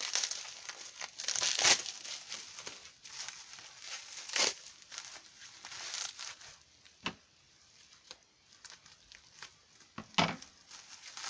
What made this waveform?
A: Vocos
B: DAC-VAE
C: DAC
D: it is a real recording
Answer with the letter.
D